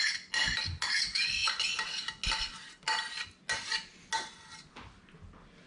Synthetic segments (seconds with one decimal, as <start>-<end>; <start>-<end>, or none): none